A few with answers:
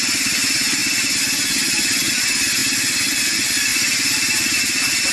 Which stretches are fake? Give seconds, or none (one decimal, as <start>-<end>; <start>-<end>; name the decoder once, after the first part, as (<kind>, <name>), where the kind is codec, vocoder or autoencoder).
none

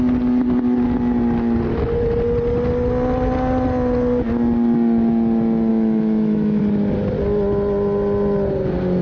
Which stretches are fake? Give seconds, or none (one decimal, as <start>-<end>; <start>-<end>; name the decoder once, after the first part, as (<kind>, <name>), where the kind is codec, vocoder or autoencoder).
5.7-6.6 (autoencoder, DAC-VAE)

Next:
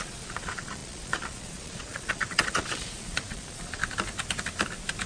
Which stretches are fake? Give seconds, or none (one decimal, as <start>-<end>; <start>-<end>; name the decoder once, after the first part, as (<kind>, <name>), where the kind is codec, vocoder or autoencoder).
0.0-3.8 (vocoder, Vocos)